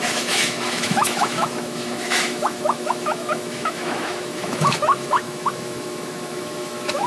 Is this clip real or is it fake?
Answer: fake